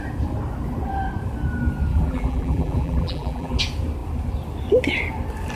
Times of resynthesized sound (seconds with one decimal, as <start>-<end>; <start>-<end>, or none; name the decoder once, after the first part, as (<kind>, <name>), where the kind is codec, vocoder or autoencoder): 1.9-3.6 (vocoder, BigVGAN v2)